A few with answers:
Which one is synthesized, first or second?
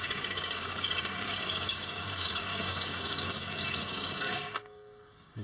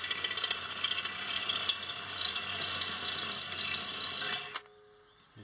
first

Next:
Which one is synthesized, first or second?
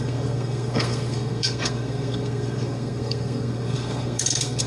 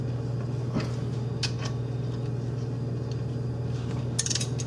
first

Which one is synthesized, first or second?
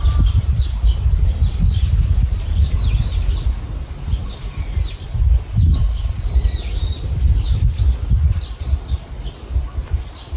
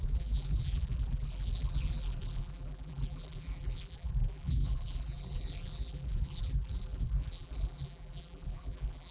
second